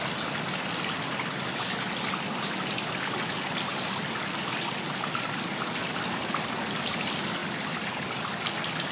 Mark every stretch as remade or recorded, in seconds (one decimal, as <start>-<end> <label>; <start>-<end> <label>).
0.0-8.9 recorded